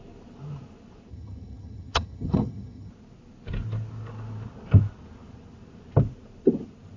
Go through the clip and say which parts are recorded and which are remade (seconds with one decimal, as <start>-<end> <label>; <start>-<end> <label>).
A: 0.0-1.1 recorded; 1.1-2.9 remade; 2.9-7.0 recorded